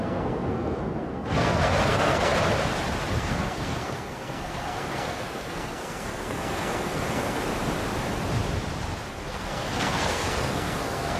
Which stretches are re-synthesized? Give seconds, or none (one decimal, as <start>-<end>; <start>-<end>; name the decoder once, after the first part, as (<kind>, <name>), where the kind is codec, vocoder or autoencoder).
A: 0.0-2.3 (codec, SNAC); 3.1-7.5; 9.1-11.2